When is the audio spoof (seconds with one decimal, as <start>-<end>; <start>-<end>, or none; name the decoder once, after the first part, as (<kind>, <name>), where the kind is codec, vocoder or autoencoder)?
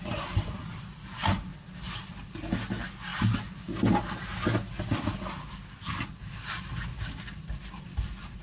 none